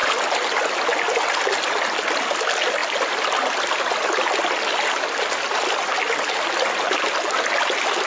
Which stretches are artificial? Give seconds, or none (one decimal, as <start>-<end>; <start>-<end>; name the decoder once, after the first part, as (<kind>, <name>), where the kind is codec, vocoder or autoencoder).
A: none